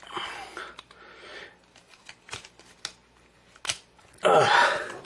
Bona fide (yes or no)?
yes